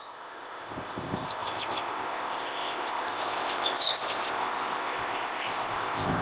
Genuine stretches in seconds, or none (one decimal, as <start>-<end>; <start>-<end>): none